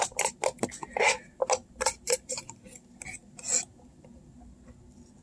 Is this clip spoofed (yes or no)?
no